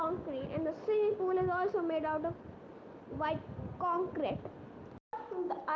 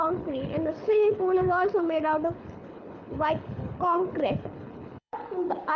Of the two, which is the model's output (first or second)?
second